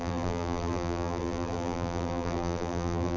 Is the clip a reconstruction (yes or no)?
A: yes